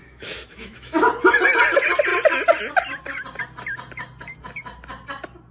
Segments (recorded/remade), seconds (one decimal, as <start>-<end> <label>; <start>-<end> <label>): 0.0-1.0 remade; 1.0-5.5 recorded

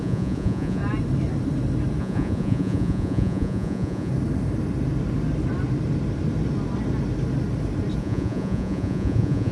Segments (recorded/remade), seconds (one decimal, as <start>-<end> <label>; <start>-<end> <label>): 0.0-0.8 remade; 0.8-2.0 recorded; 2.0-4.1 remade; 4.1-8.0 recorded; 8.0-9.5 remade

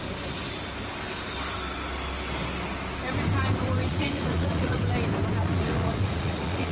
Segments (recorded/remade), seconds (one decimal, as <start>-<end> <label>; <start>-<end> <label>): 0.0-3.9 recorded; 3.9-4.8 remade; 4.8-5.4 recorded; 5.4-6.7 remade